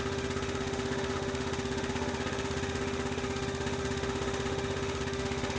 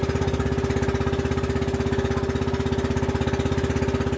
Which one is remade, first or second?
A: first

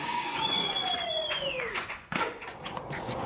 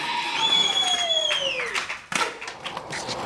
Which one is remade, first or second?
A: first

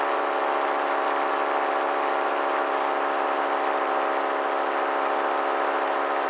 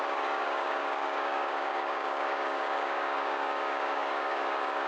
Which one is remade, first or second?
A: second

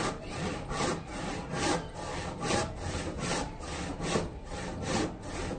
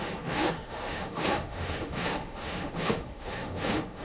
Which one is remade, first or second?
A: second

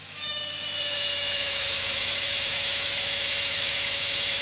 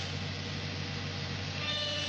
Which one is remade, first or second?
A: first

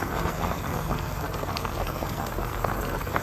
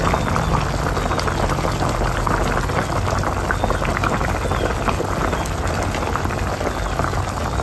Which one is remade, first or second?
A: first